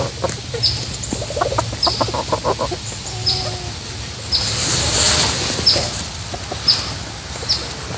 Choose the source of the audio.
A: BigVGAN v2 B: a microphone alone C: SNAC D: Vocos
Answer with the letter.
B